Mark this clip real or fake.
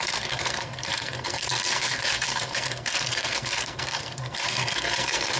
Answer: fake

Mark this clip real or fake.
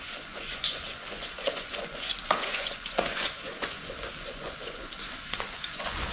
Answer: fake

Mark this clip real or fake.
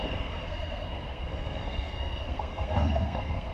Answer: fake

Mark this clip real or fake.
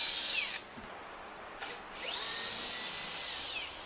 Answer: real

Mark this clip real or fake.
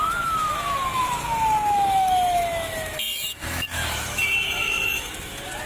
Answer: fake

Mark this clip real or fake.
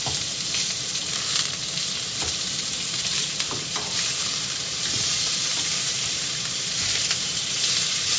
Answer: fake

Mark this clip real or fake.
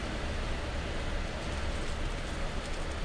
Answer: real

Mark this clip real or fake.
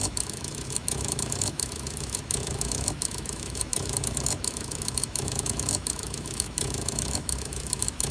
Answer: fake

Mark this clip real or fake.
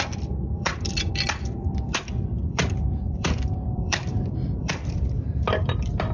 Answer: fake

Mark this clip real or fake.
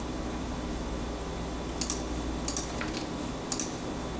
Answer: real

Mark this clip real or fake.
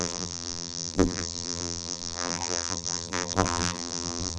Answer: fake